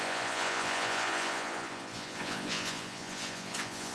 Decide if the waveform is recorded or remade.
remade